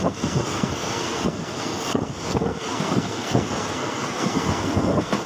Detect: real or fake fake